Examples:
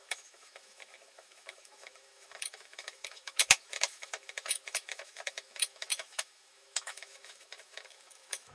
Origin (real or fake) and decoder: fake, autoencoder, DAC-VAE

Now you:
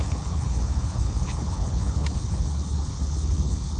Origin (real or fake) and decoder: fake, codec, HILCodec